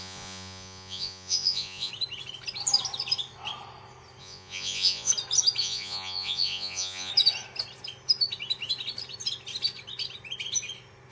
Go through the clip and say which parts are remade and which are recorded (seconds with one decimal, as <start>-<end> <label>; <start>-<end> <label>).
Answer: 0.0-1.9 remade; 1.9-4.2 recorded; 4.2-5.1 remade; 5.1-5.6 recorded; 5.6-7.1 remade; 7.1-11.1 recorded